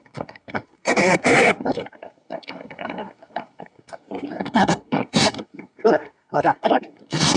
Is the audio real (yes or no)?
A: no